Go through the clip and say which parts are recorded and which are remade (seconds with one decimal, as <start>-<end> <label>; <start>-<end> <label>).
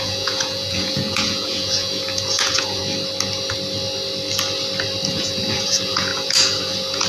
0.0-2.8 remade; 2.8-5.1 recorded; 5.1-7.1 remade